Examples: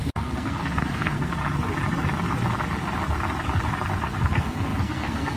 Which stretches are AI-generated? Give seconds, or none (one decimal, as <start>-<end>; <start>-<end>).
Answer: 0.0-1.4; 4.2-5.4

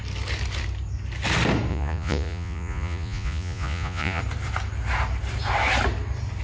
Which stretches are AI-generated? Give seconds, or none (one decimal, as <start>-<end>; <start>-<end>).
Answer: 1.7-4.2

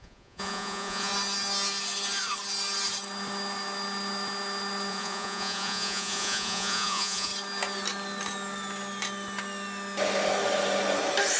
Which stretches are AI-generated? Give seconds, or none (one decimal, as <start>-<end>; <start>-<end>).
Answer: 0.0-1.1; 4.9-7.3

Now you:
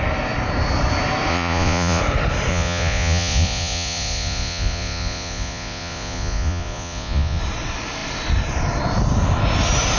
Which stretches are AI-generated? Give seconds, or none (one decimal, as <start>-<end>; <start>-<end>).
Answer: 1.3-2.0; 2.5-7.4